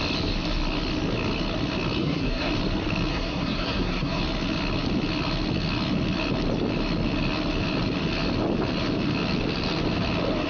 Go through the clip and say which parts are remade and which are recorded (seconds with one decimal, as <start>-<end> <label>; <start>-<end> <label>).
0.0-2.0 recorded; 2.0-2.5 remade; 2.5-3.1 recorded; 3.1-4.2 remade; 4.2-10.5 recorded